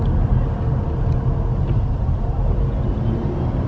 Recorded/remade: recorded